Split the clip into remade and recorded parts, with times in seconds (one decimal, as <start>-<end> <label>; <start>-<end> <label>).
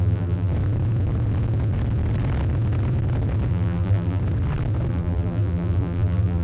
0.0-0.5 remade; 0.5-3.5 recorded; 3.5-4.2 remade; 4.2-4.9 recorded; 4.9-6.4 remade